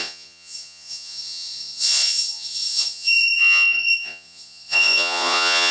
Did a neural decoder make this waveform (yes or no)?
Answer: yes